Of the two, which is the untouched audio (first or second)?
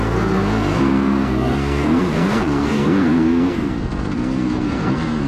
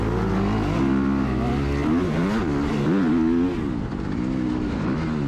second